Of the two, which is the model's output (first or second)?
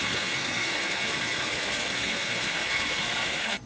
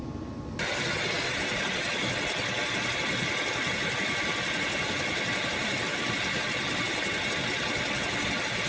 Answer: first